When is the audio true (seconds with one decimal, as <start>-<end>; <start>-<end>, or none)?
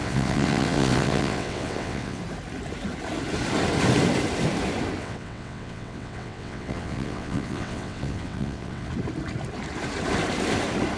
2.2-5.0; 8.9-11.0